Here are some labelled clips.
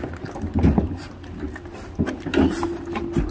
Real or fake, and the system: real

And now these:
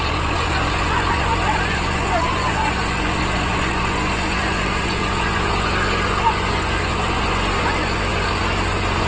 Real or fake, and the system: fake, vocoder, Vocos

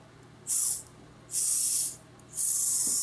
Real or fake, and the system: real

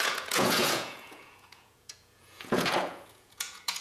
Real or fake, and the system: fake, vocoder, Vocos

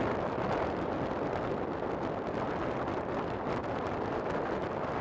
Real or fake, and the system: real